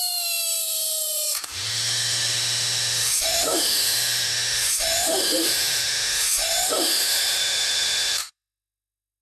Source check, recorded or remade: remade